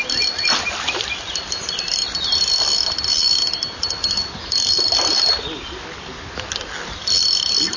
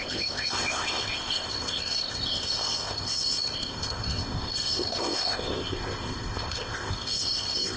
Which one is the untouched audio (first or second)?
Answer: first